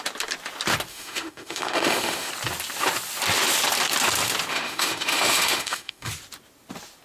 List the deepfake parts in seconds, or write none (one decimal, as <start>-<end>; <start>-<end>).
0.9-2.3; 4.5-6.1